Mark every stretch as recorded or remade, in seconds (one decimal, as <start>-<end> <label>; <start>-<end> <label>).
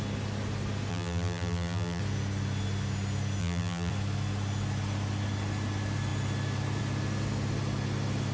0.0-0.9 recorded; 0.9-2.0 remade; 2.0-3.4 recorded; 3.4-3.9 remade; 3.9-8.3 recorded